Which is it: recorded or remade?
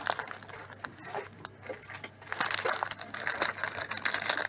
recorded